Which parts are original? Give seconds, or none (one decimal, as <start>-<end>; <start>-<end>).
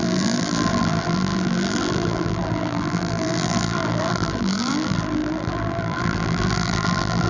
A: none